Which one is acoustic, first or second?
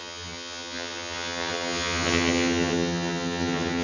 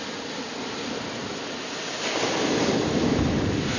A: second